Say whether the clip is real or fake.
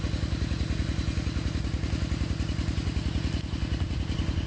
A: real